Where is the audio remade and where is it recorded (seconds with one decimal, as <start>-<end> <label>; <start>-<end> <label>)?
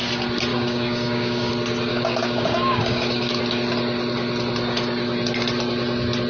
0.0-0.5 recorded; 0.5-1.5 remade; 1.5-1.9 recorded; 1.9-3.4 remade; 3.4-6.3 recorded